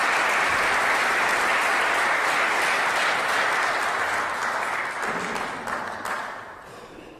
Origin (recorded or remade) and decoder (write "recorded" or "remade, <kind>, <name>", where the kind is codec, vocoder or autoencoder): recorded